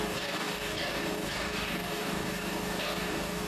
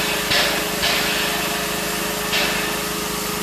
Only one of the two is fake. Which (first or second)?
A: first